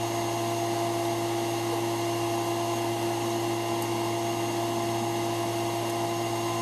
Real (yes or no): yes